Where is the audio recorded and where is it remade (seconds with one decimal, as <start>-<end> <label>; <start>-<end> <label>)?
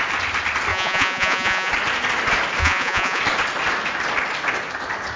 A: 0.0-0.7 recorded; 0.7-1.7 remade; 1.7-2.6 recorded; 2.6-3.2 remade; 3.2-5.2 recorded